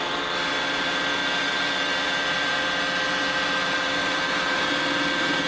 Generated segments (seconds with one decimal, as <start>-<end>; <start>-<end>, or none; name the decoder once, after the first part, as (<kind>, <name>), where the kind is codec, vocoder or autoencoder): 4.0-4.7 (vocoder, BigVGAN v2)